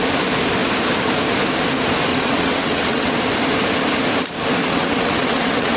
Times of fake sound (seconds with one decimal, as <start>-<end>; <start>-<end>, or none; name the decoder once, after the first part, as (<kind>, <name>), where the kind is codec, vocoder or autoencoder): 2.1-3.2 (vocoder, WaveNeXt); 4.6-5.8